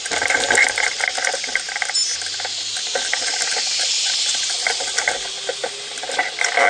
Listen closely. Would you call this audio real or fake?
real